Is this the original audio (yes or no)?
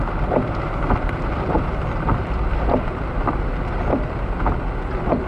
no